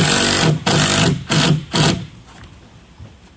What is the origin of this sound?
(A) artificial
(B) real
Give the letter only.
B